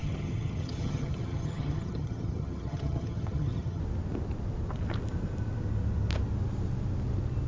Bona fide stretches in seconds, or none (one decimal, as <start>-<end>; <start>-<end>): 3.8-7.5